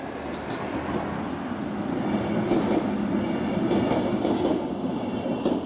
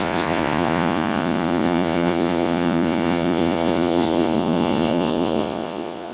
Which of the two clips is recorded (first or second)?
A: first